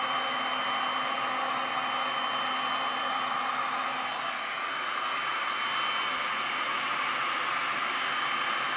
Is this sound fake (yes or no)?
no